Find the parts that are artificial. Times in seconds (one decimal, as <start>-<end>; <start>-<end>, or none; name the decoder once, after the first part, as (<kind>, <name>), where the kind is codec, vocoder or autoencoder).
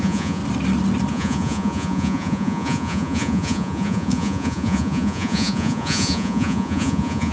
0.0-0.4 (vocoder, Vocos); 1.1-7.3